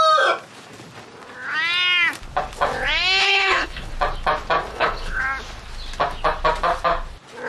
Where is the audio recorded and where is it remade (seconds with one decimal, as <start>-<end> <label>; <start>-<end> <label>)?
0.0-3.2 recorded; 3.2-3.9 remade; 3.9-4.7 recorded; 4.7-5.2 remade; 5.2-7.5 recorded